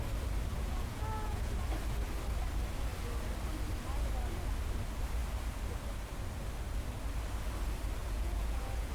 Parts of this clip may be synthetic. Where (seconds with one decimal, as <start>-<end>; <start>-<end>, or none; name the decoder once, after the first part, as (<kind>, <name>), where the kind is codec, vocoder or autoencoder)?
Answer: 0.5-1.5 (vocoder, Vocos); 8.0-8.9